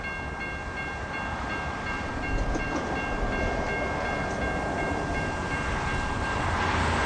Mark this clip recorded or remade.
recorded